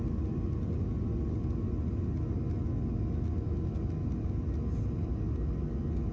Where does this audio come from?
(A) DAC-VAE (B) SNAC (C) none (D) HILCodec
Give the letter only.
C